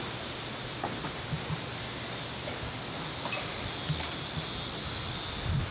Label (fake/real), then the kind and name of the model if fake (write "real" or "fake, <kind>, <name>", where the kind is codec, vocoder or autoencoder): real